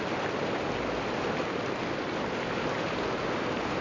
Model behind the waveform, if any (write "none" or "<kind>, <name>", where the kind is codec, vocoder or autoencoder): none